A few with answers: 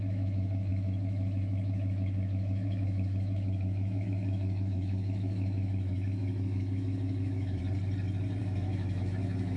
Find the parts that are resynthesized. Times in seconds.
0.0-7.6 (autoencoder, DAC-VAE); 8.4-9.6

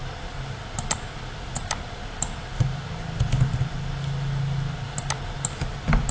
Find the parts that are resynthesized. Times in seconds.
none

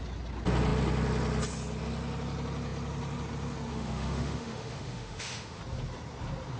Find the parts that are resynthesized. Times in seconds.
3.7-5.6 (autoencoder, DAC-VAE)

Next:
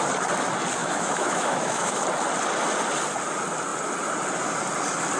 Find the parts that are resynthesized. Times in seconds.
0.8-2.0 (autoencoder, DAC-VAE)